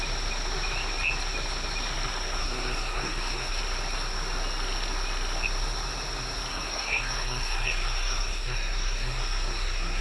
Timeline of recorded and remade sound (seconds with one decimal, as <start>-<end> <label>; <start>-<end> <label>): 0.0-2.4 recorded; 2.4-3.6 remade; 3.6-6.5 recorded; 6.5-10.0 remade